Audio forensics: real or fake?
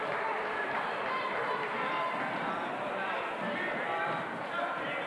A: fake